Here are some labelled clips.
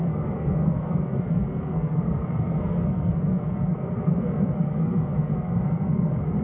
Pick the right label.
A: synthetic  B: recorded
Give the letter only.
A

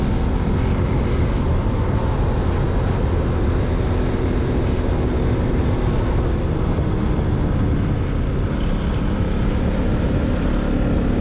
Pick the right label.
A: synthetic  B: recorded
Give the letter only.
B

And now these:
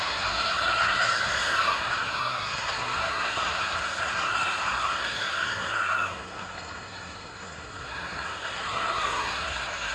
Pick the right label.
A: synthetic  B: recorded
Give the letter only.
A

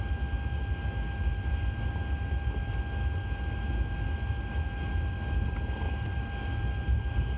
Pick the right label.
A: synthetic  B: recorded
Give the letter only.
B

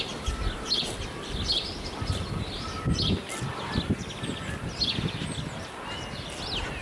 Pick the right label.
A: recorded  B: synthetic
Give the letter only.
A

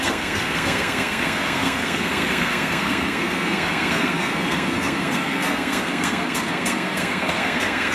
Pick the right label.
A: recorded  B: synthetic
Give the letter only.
B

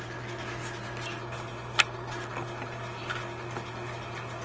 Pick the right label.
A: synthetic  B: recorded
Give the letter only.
B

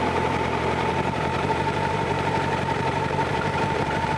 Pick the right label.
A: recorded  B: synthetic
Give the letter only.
B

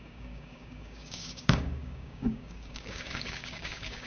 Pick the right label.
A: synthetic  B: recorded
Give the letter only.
A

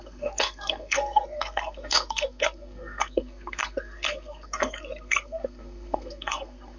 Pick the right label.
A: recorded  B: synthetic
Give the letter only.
B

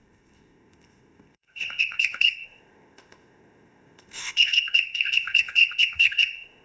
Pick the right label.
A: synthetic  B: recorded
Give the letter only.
A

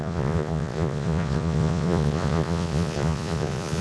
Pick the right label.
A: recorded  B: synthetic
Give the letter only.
B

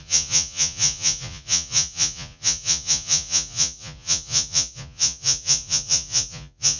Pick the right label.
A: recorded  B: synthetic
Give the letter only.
B